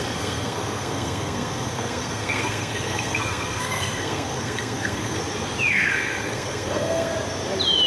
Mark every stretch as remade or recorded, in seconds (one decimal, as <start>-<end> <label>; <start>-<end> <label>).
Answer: 0.0-5.2 remade; 5.2-5.7 recorded; 5.7-7.1 remade; 7.1-7.9 recorded